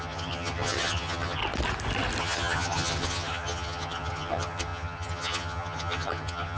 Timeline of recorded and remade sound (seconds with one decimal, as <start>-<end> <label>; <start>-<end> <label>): 0.0-1.4 remade; 1.4-2.2 recorded; 2.2-6.6 remade